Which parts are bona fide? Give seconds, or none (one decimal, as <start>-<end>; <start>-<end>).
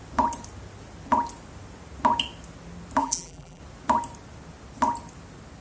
0.0-3.0; 3.6-5.6